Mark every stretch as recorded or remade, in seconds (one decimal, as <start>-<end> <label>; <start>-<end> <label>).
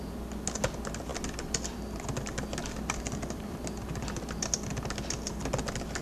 0.0-6.0 recorded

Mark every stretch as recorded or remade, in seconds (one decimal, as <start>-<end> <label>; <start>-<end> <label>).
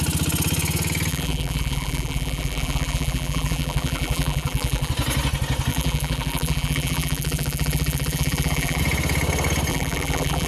0.0-1.1 recorded; 1.1-4.9 remade; 4.9-5.7 recorded; 5.7-8.8 remade; 8.8-9.7 recorded; 9.7-10.5 remade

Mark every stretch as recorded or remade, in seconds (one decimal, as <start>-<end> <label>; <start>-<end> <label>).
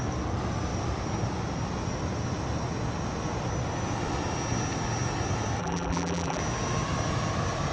0.0-5.6 recorded; 5.6-6.4 remade; 6.4-7.7 recorded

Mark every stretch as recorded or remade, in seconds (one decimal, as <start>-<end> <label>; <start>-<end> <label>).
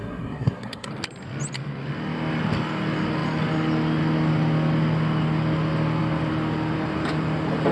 0.0-0.9 remade; 0.9-7.7 recorded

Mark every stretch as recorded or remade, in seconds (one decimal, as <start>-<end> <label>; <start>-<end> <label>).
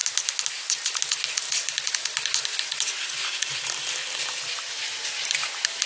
0.0-5.9 recorded